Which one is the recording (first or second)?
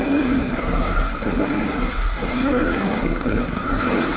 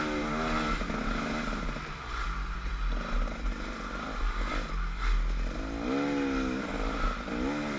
second